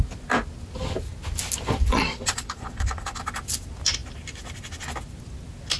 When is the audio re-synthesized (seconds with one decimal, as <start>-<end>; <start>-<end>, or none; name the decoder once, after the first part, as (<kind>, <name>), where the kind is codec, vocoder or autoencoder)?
1.9-3.2 (vocoder, Vocos)